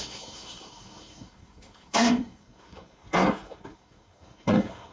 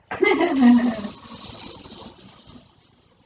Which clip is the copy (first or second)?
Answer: first